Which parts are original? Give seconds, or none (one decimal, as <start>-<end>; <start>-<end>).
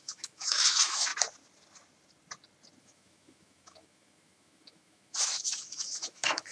1.1-2.8